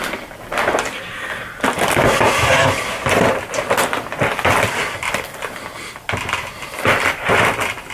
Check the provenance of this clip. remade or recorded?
recorded